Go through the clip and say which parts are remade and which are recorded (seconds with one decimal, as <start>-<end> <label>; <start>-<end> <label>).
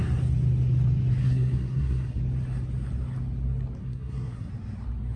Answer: 0.0-1.2 recorded; 1.2-2.2 remade; 2.2-3.8 recorded; 3.8-4.5 remade; 4.5-5.2 recorded